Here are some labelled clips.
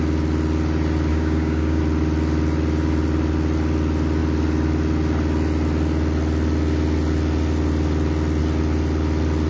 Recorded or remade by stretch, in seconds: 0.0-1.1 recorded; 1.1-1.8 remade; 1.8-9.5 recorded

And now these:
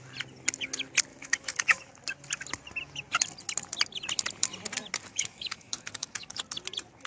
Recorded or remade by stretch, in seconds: 0.0-1.1 recorded; 1.1-1.9 remade; 1.9-5.1 recorded; 5.1-6.4 remade; 6.4-7.1 recorded

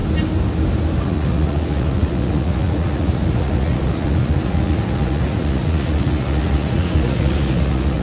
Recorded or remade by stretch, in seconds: 0.0-1.0 recorded; 1.0-8.0 remade